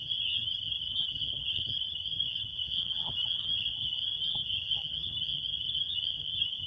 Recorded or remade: remade